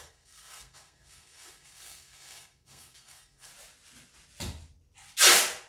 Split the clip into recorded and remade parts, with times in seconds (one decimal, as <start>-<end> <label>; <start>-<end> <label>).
0.0-3.5 remade; 3.5-5.7 recorded